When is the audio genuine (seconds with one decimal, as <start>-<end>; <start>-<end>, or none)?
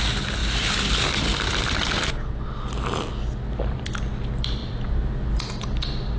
0.0-4.6; 5.4-6.2